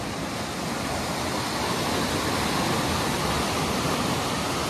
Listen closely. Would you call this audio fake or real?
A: real